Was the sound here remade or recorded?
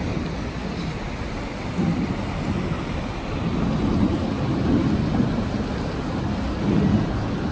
recorded